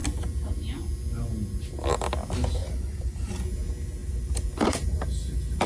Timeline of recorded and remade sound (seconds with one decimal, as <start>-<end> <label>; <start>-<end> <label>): 0.0-2.6 recorded; 2.6-3.3 remade; 3.3-4.0 recorded; 4.0-5.7 remade

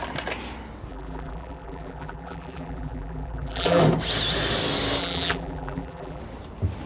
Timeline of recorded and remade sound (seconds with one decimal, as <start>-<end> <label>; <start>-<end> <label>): 0.0-0.9 recorded; 0.9-3.8 remade; 3.8-5.0 recorded; 5.0-6.2 remade; 6.2-6.9 recorded

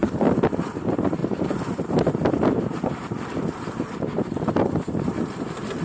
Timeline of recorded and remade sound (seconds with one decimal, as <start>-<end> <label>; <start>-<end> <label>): 0.0-0.7 remade; 0.7-1.2 recorded; 1.2-4.7 remade; 4.7-5.8 recorded

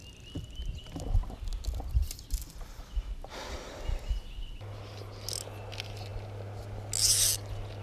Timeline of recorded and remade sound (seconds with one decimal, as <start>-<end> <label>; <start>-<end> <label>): 0.0-7.8 recorded